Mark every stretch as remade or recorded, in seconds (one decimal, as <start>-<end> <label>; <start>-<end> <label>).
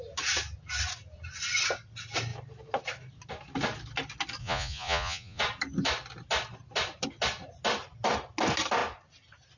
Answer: 0.0-4.4 recorded; 4.4-5.4 remade; 5.4-9.6 recorded